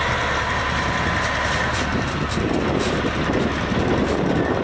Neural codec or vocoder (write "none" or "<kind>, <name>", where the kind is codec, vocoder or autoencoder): none